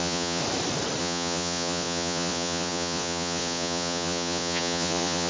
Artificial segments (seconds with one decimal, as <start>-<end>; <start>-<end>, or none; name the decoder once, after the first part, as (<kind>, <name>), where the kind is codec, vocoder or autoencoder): 0.0-0.4 (vocoder, Vocos); 1.0-5.3